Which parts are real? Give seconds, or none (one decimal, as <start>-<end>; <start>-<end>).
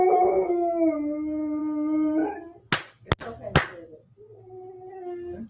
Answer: 0.0-5.5